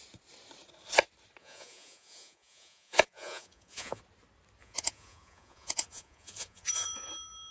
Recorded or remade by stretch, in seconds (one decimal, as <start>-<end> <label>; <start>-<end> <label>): 0.0-1.4 recorded; 1.4-4.0 remade; 4.0-4.6 recorded; 4.6-7.1 remade; 7.1-7.5 recorded